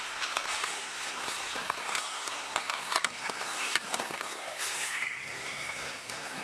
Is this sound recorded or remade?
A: remade